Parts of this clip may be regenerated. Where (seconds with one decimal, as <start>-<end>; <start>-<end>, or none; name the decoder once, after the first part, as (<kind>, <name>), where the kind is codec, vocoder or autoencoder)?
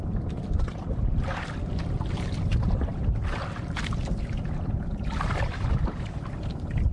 3.0-5.3 (vocoder, BigVGAN v2)